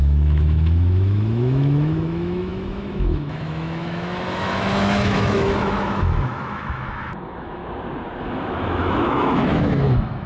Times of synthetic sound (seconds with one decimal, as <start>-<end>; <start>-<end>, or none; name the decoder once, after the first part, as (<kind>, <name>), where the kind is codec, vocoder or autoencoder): 0.0-7.6 (autoencoder, DAC-VAE); 8.2-10.3